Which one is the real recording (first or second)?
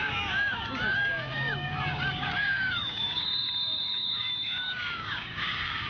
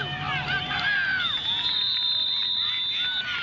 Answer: second